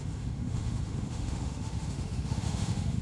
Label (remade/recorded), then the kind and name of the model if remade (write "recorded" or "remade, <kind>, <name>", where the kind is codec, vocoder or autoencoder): remade, autoencoder, DAC-VAE